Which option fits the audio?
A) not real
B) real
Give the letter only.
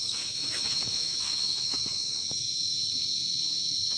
A